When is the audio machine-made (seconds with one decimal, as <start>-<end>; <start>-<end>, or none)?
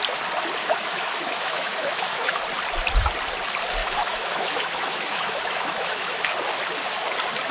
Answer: 0.6-2.4; 3.8-6.2